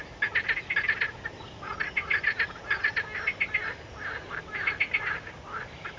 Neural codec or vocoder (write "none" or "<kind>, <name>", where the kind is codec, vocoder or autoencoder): none